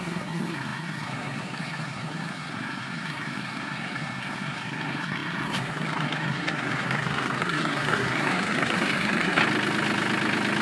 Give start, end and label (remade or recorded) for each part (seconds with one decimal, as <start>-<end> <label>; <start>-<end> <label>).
0.0-9.4 remade; 9.4-10.6 recorded